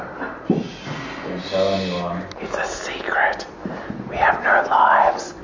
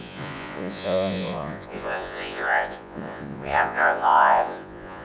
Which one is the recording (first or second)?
first